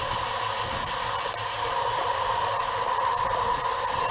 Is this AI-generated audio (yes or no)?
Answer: yes